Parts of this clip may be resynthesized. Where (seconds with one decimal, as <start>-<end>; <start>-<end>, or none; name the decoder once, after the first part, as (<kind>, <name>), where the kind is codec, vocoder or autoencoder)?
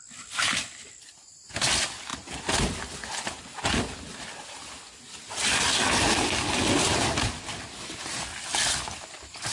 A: none